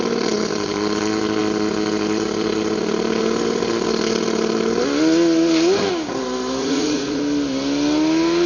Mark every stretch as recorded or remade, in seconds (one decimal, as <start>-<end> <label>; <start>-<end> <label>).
0.0-6.6 recorded; 6.6-7.2 remade; 7.2-8.5 recorded